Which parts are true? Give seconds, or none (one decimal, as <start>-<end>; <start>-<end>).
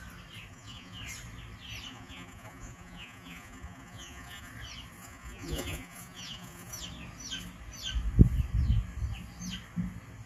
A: 0.0-0.5; 1.0-1.9; 4.5-5.0; 6.8-10.3